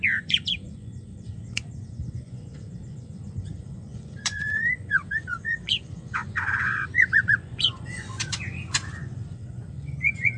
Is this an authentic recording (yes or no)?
no